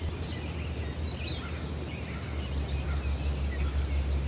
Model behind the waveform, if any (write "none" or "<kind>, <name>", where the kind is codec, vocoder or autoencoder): none